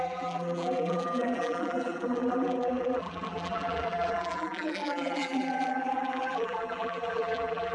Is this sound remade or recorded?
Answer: remade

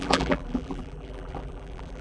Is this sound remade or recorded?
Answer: remade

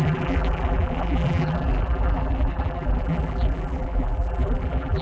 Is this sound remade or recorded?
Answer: remade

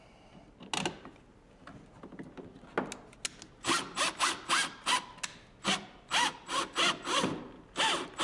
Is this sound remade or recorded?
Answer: recorded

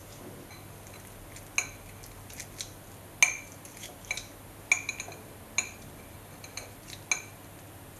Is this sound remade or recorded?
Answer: recorded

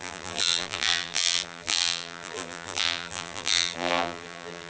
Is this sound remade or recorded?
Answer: remade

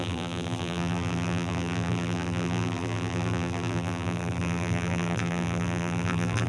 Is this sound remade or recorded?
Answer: remade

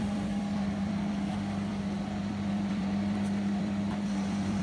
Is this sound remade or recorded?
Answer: remade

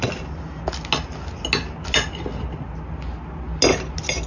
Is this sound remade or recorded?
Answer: recorded